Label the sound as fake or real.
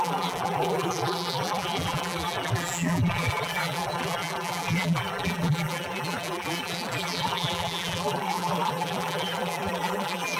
fake